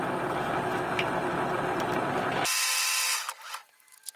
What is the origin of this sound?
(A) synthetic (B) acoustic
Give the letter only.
B